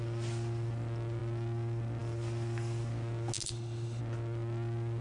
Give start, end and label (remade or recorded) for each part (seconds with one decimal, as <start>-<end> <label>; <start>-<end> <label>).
0.0-3.4 recorded; 3.4-4.0 remade; 4.0-5.0 recorded